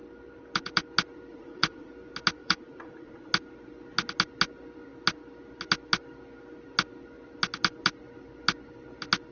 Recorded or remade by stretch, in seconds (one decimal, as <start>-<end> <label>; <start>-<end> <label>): 0.0-1.3 recorded; 1.3-1.9 remade; 1.9-2.4 recorded; 2.4-3.3 remade; 3.3-9.3 recorded